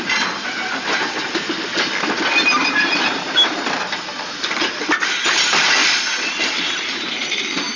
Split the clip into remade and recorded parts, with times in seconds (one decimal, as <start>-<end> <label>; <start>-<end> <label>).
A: 0.0-1.7 remade; 1.7-2.6 recorded; 2.6-5.8 remade; 5.8-6.4 recorded; 6.4-7.8 remade